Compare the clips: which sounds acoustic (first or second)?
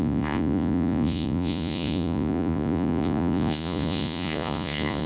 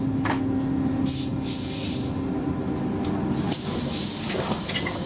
second